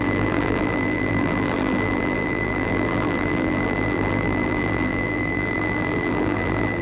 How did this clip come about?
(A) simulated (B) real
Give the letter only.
A